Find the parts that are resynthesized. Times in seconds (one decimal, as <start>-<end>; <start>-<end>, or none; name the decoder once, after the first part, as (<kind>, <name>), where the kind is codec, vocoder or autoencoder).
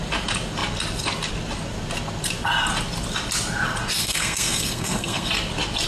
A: 4.0-5.3 (codec, SNAC)